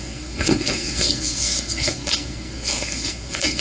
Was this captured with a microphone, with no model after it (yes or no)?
no